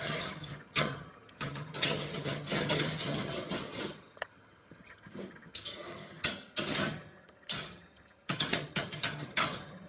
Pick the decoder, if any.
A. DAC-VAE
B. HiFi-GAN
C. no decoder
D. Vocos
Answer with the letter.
B